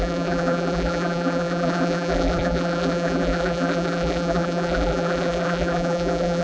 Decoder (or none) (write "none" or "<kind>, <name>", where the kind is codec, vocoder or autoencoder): vocoder, BigVGAN v2